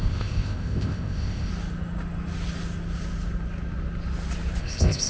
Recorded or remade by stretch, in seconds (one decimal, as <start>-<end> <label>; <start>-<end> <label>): 0.0-1.5 remade; 1.5-4.6 recorded; 4.6-5.1 remade